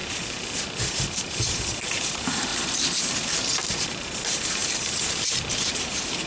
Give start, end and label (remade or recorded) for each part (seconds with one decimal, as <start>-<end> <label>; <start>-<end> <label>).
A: 0.0-2.5 remade; 2.5-3.5 recorded; 3.5-6.3 remade